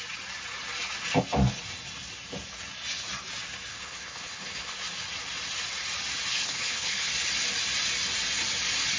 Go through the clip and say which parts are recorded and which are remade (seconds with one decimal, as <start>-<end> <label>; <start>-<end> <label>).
0.0-3.7 recorded; 3.7-4.7 remade; 4.7-6.3 recorded; 6.3-7.1 remade; 7.1-9.0 recorded